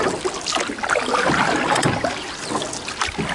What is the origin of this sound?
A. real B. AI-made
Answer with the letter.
A